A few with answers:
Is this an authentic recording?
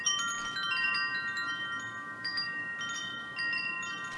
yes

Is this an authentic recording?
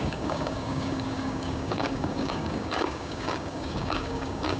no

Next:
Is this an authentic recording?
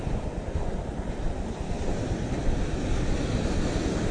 yes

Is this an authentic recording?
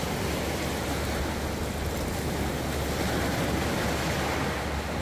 yes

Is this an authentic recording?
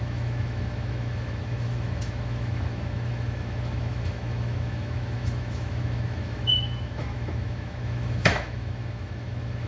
no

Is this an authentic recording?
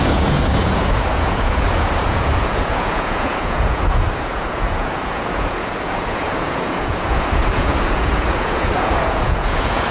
no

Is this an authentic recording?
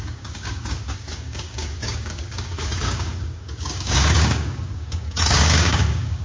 no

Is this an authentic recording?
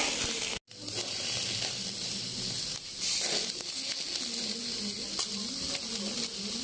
yes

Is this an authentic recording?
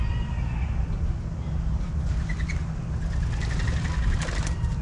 yes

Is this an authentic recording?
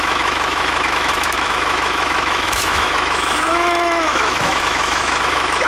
no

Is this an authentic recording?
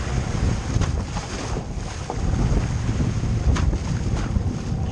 yes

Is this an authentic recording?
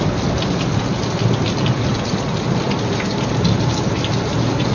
yes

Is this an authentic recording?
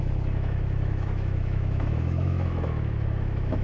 no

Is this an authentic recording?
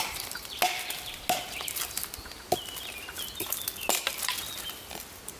yes